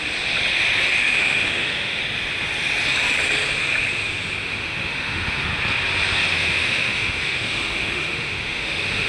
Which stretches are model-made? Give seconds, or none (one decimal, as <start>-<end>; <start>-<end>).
1.0-2.0; 4.4-5.5; 6.3-9.1